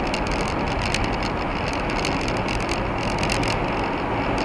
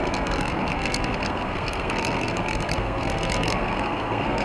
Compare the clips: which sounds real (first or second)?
first